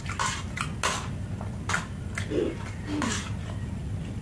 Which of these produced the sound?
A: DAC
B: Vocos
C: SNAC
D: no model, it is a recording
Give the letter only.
D